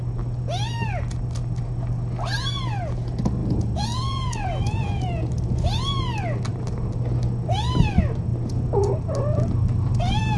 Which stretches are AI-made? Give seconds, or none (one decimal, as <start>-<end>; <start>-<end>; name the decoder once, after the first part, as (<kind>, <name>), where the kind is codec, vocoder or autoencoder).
3.4-5.3 (vocoder, Vocos)